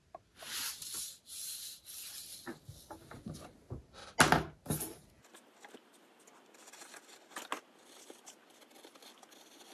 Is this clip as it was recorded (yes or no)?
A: yes